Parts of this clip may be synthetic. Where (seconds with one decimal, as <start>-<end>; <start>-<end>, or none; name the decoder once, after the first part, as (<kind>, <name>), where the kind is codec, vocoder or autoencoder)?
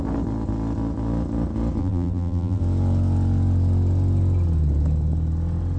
1.8-2.6 (vocoder, BigVGAN v2)